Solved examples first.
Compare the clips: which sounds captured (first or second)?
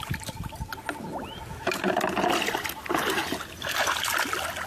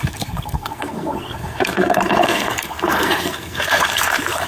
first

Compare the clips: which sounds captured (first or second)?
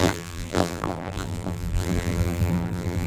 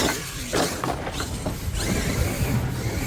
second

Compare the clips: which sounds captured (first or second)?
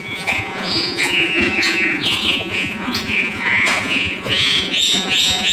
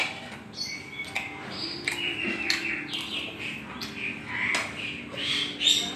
second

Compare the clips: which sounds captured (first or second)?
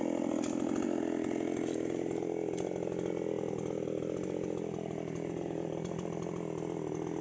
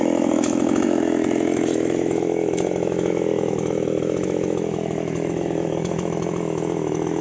first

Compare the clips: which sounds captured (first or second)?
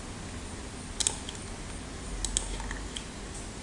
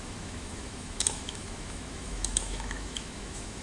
first